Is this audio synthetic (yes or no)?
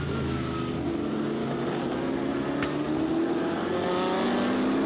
no